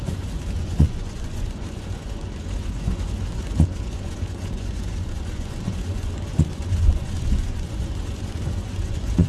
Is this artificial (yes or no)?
yes